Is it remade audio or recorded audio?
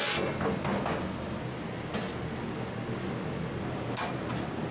recorded